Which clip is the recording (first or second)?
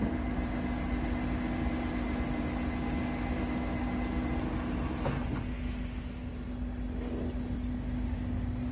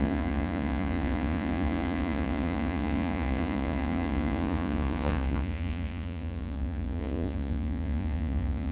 first